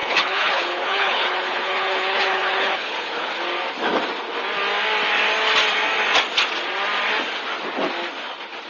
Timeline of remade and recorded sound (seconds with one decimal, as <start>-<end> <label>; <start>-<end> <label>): 0.0-3.3 remade; 3.3-8.7 recorded